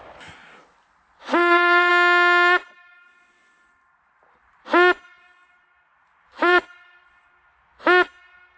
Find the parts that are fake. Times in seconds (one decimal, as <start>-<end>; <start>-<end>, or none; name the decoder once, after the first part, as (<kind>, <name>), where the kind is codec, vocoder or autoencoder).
0.0-1.9 (vocoder, BigVGAN v2); 6.1-7.7